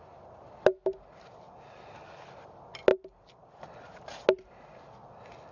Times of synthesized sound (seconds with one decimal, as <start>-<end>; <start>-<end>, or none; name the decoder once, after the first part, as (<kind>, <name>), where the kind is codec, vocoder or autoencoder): none